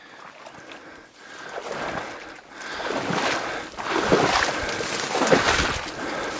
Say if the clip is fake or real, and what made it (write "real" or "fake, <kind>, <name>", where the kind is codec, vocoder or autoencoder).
real